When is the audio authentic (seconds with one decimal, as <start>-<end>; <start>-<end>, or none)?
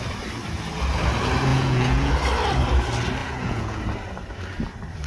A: 0.0-1.5; 2.1-3.2; 3.8-5.1